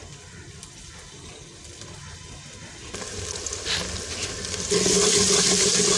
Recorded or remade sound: recorded